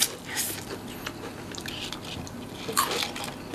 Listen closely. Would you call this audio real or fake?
real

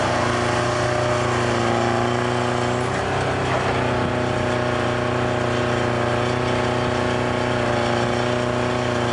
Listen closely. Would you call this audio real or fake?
real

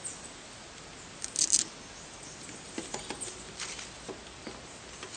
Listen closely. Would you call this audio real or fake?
real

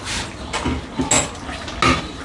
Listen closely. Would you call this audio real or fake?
real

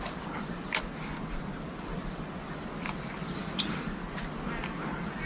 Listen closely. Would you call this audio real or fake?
real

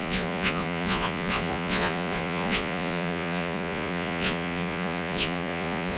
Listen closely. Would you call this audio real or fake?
fake